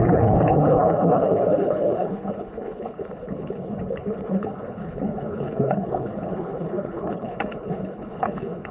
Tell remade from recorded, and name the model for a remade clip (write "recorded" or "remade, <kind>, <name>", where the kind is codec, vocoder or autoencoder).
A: remade, codec, HILCodec